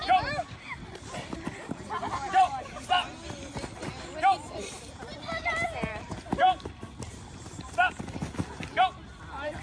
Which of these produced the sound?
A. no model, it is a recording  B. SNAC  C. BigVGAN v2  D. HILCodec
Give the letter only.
A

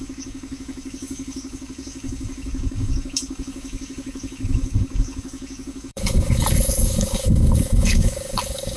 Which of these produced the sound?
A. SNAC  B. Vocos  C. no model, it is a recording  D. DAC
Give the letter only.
D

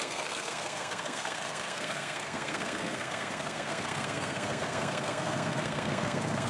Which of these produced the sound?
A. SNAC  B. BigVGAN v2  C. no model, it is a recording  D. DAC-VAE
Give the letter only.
A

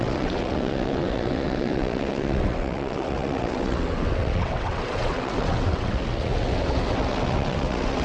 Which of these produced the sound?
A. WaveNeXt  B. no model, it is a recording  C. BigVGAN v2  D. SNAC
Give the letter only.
A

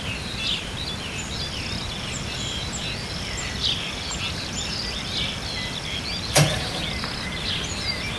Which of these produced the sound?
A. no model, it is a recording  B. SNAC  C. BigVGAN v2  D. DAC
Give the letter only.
A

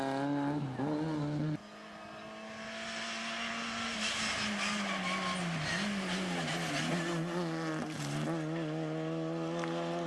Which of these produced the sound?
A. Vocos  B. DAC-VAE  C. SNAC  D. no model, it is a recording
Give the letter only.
D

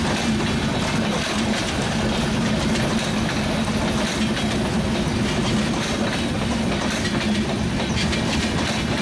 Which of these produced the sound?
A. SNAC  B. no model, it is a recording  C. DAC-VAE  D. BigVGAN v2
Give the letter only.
B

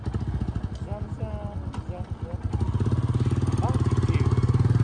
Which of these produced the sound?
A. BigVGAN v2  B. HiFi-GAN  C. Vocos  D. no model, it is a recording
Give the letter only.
D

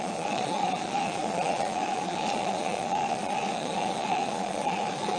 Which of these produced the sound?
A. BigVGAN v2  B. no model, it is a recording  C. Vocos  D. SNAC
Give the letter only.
C